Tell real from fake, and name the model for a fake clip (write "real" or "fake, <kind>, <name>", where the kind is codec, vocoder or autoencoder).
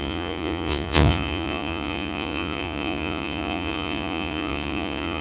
fake, vocoder, Vocos